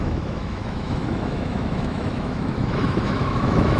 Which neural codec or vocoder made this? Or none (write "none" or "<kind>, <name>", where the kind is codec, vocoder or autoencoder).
autoencoder, DAC-VAE